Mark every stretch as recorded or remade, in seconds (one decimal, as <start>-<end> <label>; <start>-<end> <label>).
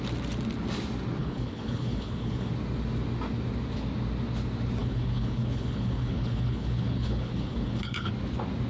0.0-1.2 recorded; 1.2-2.5 remade; 2.5-4.8 recorded; 4.8-8.1 remade; 8.1-8.7 recorded